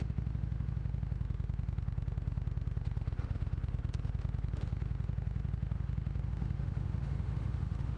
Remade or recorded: remade